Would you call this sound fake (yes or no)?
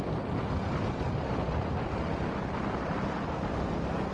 no